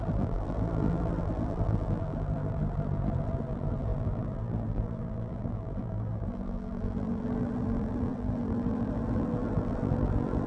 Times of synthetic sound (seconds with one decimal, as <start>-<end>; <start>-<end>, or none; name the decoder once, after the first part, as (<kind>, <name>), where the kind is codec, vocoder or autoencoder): 0.0-10.5 (vocoder, BigVGAN v2)